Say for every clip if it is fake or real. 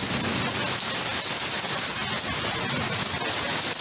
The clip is real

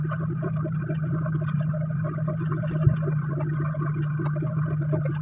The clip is real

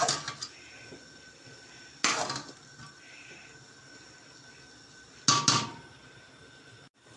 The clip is real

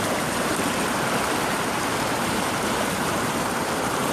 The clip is fake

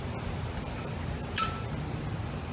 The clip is real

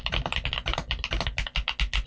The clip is real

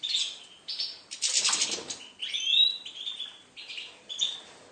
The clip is real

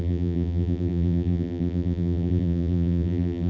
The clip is fake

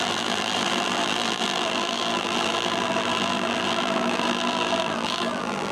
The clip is fake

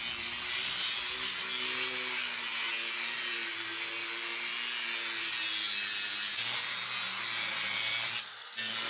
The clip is real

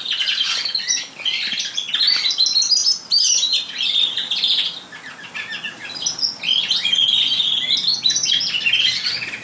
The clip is real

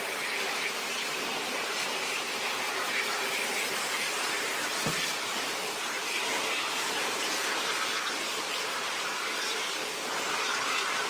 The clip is fake